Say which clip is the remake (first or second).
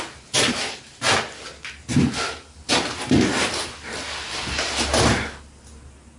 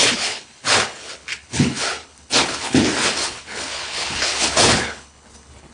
second